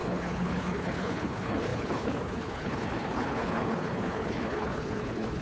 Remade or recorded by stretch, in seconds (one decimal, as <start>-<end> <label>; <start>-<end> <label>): 0.0-5.4 remade